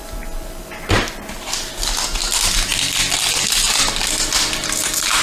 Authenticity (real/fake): real